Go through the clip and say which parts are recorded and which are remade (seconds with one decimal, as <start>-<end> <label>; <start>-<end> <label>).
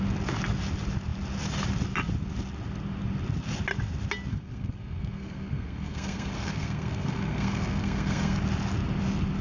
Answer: 0.0-4.3 recorded; 4.3-8.4 remade; 8.4-9.4 recorded